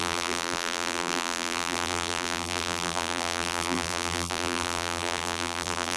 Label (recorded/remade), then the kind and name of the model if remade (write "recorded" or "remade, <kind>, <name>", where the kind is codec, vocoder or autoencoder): remade, vocoder, BigVGAN v2